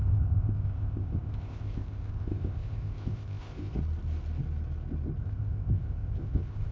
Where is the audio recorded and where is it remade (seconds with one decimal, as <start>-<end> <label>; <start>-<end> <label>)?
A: 0.0-3.8 remade; 3.8-5.2 recorded; 5.2-6.7 remade